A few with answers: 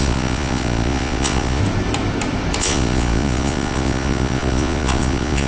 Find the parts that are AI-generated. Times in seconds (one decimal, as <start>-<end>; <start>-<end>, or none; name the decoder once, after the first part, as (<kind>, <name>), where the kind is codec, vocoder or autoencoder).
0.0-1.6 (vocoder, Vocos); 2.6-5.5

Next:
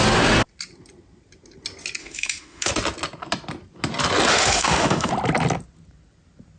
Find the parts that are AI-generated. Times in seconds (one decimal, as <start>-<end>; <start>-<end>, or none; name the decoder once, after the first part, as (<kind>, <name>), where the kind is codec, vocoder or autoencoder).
2.0-2.7 (autoencoder, DAC-VAE); 4.3-5.1

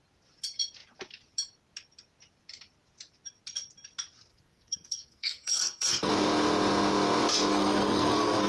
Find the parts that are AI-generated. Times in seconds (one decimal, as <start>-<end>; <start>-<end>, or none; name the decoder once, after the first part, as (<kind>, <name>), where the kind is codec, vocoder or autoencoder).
4.3-6.1 (codec, SNAC); 7.5-8.5

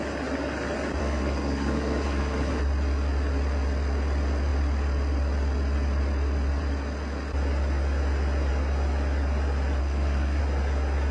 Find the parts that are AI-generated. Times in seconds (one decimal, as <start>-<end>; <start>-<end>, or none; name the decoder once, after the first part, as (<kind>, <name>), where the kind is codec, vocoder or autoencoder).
1.0-2.6 (codec, SNAC); 9.8-10.4

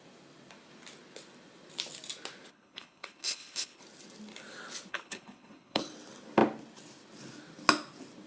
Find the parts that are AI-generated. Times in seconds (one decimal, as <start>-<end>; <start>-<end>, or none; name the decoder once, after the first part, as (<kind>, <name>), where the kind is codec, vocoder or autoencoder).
2.5-3.8 (codec, HILCodec); 4.9-5.8

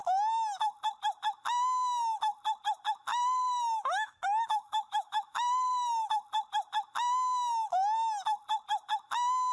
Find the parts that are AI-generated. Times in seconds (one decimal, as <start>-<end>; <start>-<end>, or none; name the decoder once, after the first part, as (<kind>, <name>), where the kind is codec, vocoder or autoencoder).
3.1-6.1 (autoencoder, DAC-VAE)

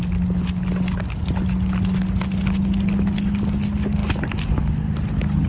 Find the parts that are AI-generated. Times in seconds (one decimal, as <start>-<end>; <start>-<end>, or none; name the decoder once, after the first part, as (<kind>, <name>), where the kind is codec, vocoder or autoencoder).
none